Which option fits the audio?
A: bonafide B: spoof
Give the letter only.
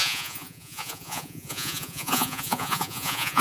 B